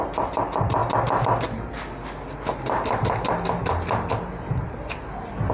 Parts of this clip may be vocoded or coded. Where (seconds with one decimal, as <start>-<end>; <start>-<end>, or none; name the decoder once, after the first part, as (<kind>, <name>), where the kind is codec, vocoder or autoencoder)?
none